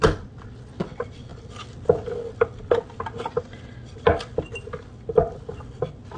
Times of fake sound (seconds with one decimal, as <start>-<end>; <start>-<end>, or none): none